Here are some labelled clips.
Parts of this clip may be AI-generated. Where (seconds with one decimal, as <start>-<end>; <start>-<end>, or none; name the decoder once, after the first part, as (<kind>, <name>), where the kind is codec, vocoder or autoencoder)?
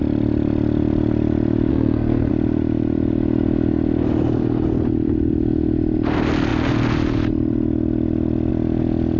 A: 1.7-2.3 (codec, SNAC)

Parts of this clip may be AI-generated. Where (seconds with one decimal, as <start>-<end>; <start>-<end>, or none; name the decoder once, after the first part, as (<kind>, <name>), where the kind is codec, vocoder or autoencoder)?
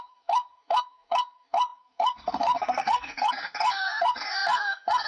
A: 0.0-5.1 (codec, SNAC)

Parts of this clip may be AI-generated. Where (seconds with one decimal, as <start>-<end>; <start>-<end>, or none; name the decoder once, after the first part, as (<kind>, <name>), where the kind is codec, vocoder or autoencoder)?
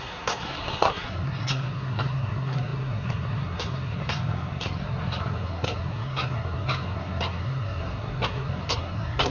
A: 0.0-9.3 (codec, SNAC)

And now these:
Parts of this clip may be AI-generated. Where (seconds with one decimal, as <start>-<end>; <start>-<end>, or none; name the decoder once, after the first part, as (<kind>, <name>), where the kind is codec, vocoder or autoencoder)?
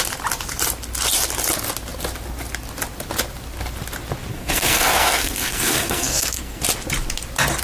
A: 4.3-6.6 (codec, SNAC)